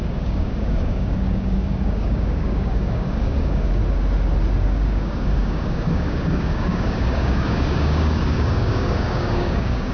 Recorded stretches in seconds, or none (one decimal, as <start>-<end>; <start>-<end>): 3.8-4.6